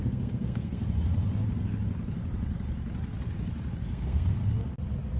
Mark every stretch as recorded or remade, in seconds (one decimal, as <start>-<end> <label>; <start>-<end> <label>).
0.0-0.8 remade; 0.8-3.9 recorded; 3.9-4.4 remade; 4.4-5.2 recorded